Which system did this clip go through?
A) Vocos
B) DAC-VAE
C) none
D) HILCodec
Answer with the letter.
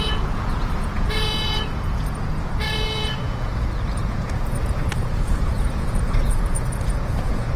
A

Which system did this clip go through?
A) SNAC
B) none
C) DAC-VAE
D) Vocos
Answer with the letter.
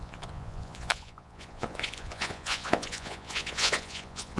D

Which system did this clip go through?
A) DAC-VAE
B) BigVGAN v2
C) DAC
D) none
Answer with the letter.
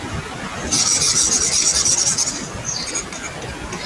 D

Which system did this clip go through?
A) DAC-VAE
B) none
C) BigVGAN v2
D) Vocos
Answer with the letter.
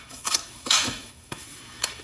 A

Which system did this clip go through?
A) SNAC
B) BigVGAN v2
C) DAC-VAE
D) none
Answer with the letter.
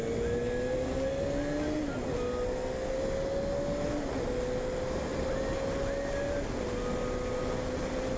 D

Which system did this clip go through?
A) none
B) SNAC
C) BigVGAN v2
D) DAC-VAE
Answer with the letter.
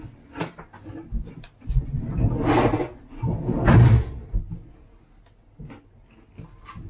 A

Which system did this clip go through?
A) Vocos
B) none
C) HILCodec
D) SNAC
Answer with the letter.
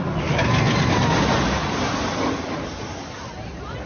B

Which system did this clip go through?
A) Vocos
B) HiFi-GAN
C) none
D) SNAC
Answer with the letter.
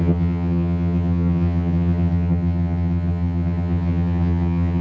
B